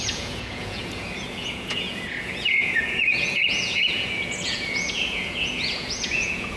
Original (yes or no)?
no